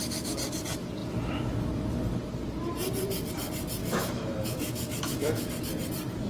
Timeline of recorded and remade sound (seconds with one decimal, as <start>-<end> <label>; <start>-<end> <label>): 0.0-3.8 recorded; 3.8-5.5 remade; 5.5-6.3 recorded